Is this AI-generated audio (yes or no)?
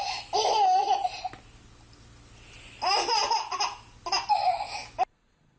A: no